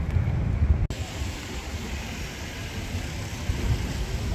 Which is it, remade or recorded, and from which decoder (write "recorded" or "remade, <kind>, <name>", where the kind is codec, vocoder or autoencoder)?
recorded